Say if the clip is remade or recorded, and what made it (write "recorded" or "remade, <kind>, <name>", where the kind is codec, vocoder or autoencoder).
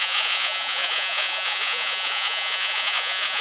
remade, vocoder, Vocos